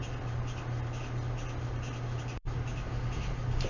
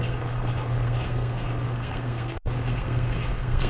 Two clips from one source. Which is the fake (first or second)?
second